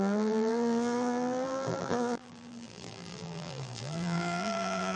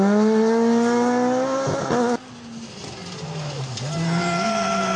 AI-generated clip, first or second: first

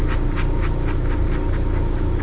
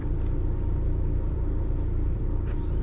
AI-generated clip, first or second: second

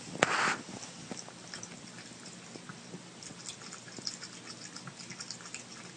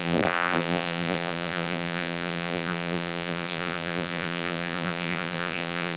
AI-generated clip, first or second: second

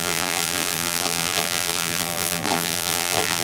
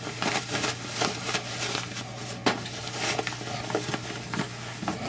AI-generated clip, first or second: first